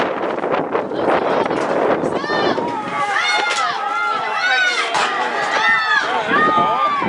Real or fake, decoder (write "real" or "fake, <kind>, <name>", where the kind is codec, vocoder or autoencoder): real